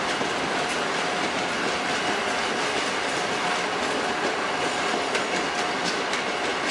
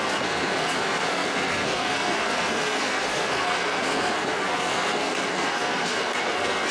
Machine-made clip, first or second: second